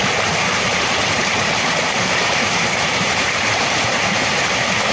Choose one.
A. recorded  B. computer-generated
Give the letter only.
B